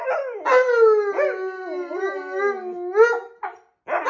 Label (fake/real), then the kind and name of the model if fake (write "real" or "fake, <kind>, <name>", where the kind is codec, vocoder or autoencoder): real